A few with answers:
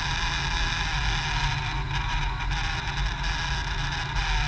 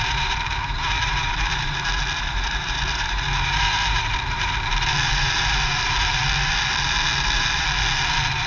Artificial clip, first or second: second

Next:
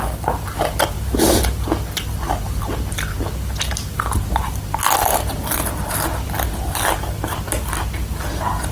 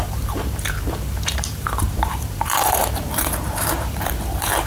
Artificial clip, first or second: second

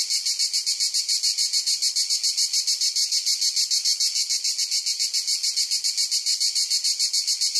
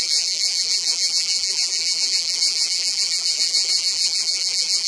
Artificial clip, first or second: second